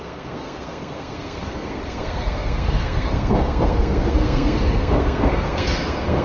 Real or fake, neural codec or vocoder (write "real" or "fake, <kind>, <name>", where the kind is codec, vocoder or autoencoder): fake, codec, SNAC